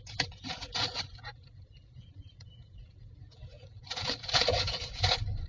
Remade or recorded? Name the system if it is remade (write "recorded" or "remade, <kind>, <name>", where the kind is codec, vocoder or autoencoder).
remade, vocoder, Vocos